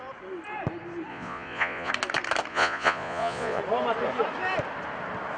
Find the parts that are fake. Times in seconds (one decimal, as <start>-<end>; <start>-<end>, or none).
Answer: 1.1-1.9; 2.5-3.6